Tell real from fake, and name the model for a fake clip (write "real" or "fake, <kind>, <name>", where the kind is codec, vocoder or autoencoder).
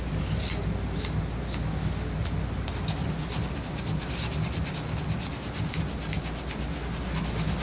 real